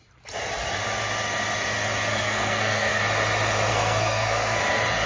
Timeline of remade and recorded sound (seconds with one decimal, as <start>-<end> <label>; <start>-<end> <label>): 0.0-2.1 recorded; 2.1-3.0 remade; 3.0-3.7 recorded; 3.7-4.6 remade; 4.6-5.1 recorded